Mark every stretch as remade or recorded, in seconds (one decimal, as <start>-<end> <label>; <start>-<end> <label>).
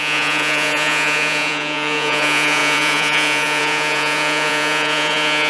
0.0-5.5 remade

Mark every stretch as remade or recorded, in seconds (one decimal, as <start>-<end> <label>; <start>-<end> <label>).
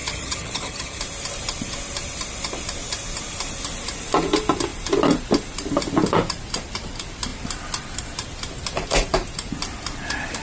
0.0-1.0 remade; 1.0-10.4 recorded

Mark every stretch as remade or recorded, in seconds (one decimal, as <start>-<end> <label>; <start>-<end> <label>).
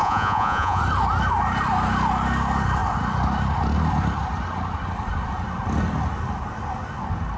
0.0-0.8 remade; 0.8-7.4 recorded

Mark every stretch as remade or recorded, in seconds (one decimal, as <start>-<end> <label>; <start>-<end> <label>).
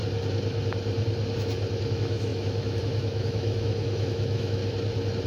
0.0-1.9 recorded; 1.9-4.6 remade; 4.6-5.3 recorded